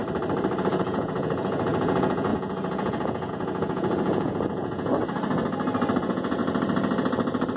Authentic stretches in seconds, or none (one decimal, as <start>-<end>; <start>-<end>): 0.0-0.6; 4.9-6.0; 6.4-7.6